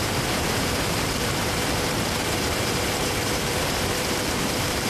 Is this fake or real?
fake